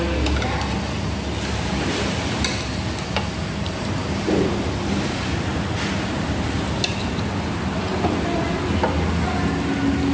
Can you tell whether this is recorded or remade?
recorded